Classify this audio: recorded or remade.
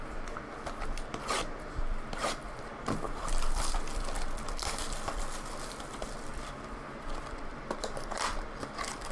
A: remade